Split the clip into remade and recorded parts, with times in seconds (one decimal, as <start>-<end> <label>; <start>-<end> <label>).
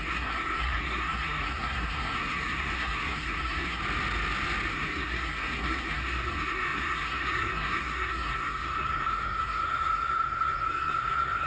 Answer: 0.0-3.8 remade; 3.8-4.7 recorded; 4.7-11.5 remade